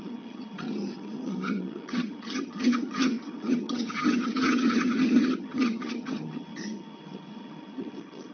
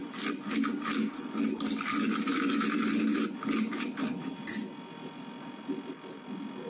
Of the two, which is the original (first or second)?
second